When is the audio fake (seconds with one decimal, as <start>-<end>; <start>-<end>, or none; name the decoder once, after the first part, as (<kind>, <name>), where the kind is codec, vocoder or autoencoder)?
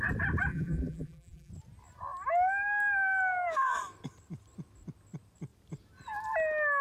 0.5-1.5 (vocoder, BigVGAN v2)